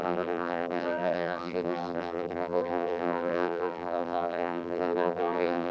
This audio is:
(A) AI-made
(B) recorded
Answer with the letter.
A